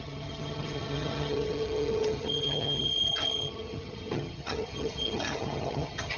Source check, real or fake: fake